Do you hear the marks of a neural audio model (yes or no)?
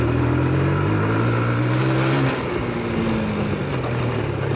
no